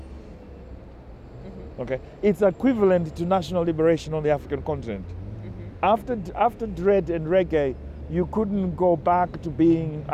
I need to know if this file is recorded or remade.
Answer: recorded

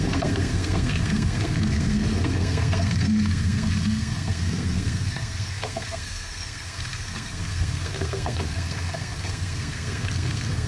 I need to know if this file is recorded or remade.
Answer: remade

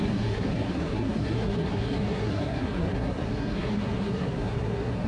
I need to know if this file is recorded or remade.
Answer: remade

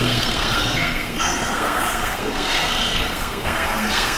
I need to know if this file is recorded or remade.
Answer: remade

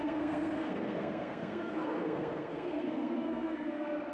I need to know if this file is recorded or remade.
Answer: remade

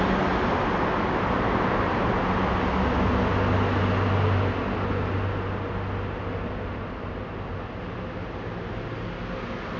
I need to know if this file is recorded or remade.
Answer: recorded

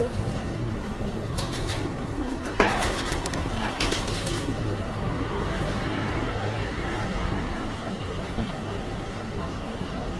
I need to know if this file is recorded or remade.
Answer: remade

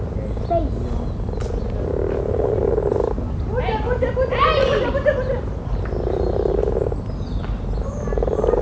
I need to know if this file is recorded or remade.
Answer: recorded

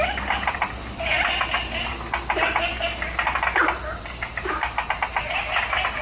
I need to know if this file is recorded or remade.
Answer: recorded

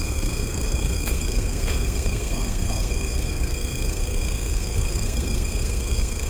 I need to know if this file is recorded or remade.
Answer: remade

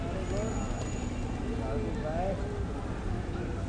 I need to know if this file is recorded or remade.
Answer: recorded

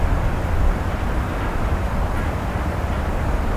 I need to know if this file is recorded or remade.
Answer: recorded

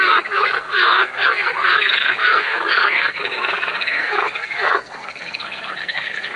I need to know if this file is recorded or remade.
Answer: remade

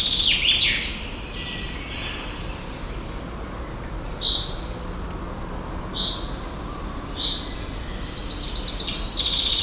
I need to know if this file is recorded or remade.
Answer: recorded